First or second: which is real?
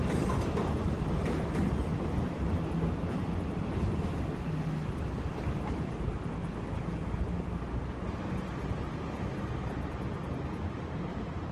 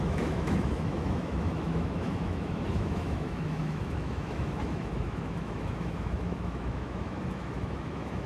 first